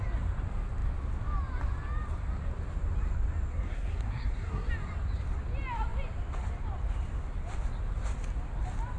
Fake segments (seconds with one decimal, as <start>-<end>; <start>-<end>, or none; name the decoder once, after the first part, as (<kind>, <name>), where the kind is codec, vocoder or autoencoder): 3.5-4.7 (codec, SNAC)